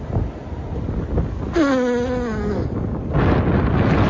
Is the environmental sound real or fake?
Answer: real